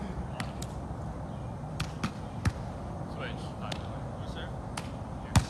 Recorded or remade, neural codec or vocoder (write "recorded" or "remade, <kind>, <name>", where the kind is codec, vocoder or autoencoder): recorded